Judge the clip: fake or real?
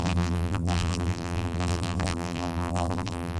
fake